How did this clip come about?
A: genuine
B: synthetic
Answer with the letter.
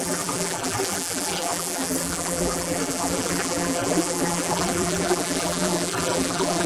B